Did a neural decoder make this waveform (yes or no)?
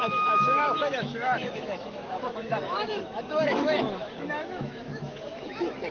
yes